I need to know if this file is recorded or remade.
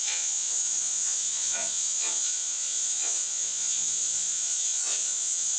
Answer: remade